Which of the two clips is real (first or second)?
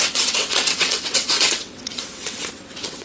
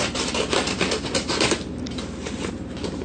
second